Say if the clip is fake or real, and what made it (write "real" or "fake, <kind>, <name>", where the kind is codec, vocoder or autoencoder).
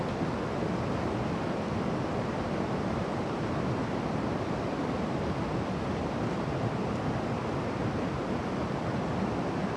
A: real